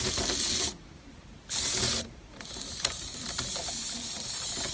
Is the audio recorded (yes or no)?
yes